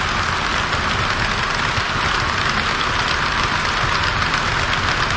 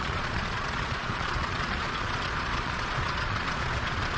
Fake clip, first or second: second